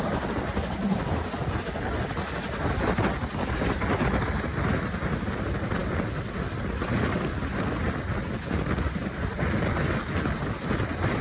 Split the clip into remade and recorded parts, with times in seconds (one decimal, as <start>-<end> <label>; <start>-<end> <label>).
0.0-11.2 recorded